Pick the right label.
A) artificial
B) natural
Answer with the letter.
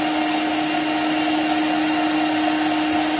B